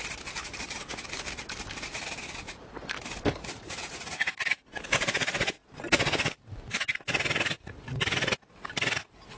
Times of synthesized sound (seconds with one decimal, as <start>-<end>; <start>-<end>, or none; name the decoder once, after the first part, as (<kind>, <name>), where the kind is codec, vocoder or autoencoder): 3.4-4.3 (vocoder, Vocos)